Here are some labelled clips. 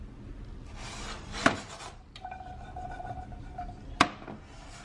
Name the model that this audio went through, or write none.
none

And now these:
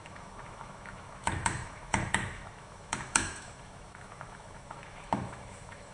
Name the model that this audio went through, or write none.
autoencoder, DAC-VAE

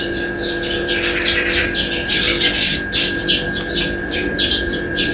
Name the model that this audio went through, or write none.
none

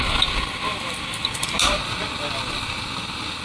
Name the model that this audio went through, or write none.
none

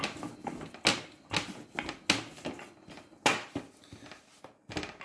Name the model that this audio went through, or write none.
none